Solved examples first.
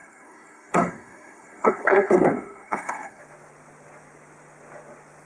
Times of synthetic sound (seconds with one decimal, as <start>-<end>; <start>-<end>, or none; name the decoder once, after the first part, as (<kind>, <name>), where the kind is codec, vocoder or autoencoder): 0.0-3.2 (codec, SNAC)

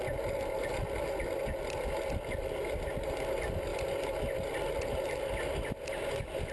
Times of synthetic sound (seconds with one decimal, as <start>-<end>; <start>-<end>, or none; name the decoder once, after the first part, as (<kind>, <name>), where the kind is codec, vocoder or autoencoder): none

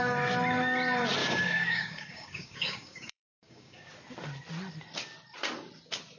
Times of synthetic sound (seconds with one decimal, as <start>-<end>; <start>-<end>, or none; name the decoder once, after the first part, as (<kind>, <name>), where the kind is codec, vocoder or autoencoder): 1.2-3.9 (codec, DAC)

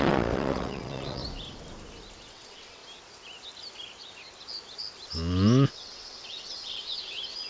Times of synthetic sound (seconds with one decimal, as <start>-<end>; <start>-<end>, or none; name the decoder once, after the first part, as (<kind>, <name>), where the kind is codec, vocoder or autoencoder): 0.0-1.2 (vocoder, WaveNeXt); 2.3-2.8; 5.7-7.5

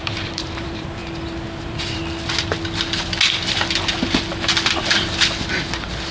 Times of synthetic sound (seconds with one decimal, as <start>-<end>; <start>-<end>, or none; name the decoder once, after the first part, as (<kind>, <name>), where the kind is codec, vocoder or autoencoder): 0.0-1.0 (vocoder, BigVGAN v2); 1.6-2.0

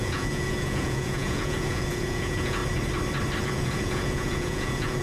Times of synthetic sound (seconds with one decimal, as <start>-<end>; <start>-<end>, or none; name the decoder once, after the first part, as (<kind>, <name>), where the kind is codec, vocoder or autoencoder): 0.0-2.6 (vocoder, Vocos); 3.4-5.0

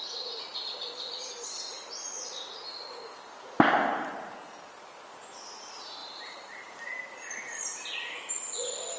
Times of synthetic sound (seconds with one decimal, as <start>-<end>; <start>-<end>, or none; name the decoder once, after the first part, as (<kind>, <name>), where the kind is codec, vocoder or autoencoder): 6.0-7.9 (vocoder, BigVGAN v2)